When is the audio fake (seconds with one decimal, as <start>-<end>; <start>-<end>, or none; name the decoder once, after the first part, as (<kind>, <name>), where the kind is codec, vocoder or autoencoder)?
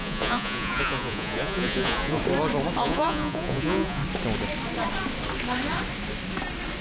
0.0-2.2 (vocoder, Vocos); 2.8-4.0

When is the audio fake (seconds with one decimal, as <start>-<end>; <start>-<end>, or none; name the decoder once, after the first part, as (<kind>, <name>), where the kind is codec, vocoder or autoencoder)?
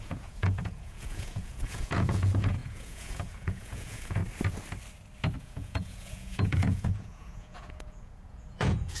0.0-4.2 (vocoder, Vocos); 5.4-9.0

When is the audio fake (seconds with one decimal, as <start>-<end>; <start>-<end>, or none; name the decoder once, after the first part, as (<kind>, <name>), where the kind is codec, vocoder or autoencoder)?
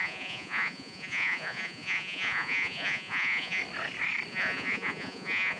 0.0-3.6 (vocoder, Vocos); 4.3-5.6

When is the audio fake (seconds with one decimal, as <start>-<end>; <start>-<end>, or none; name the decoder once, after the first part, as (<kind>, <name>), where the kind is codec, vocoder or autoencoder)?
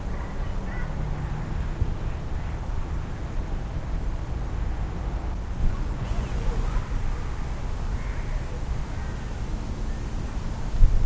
5.6-6.8 (vocoder, Vocos)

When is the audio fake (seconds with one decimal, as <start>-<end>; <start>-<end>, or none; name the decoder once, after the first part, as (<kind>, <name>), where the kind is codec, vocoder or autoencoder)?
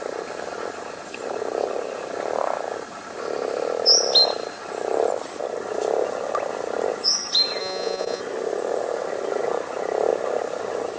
7.6-8.2 (vocoder, Vocos)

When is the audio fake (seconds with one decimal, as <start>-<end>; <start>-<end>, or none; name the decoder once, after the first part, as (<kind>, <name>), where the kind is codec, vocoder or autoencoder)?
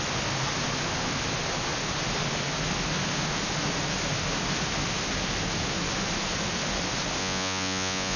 7.2-8.2 (vocoder, Vocos)